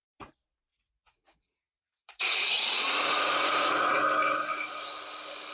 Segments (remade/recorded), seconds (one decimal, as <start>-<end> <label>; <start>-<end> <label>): 0.0-0.7 recorded; 0.7-4.0 remade; 4.0-5.5 recorded